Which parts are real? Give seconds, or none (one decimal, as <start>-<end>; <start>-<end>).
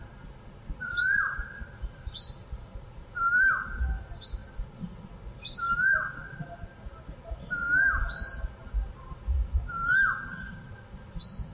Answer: 0.0-0.8; 3.8-11.5